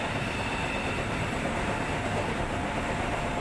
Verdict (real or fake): real